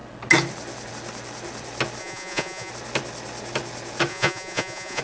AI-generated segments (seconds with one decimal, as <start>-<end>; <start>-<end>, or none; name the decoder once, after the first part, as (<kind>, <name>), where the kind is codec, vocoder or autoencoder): 2.0-2.7 (vocoder, Vocos); 4.1-5.0